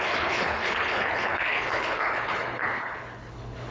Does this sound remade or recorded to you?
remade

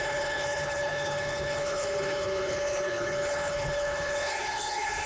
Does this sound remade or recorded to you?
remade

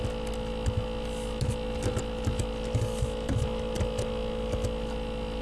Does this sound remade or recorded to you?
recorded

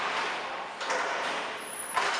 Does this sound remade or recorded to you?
recorded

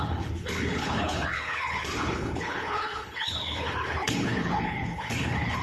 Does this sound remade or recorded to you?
remade